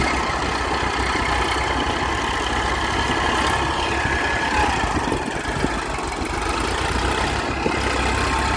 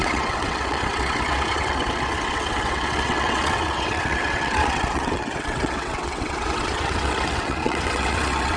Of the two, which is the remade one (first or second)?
second